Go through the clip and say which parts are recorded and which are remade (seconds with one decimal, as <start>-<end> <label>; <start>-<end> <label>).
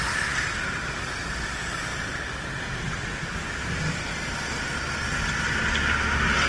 0.0-6.5 recorded